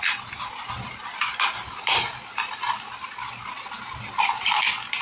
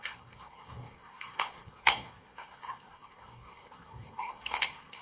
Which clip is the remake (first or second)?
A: second